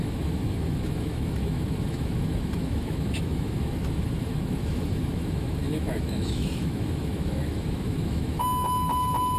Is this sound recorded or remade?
remade